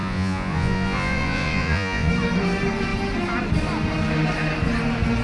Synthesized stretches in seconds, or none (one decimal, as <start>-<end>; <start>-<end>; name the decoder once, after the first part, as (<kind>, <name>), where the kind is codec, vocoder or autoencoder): 0.0-2.1 (vocoder, Vocos)